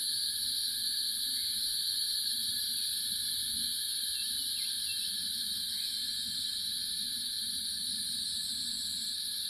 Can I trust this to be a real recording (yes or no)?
yes